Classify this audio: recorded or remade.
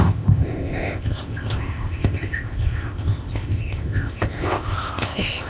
remade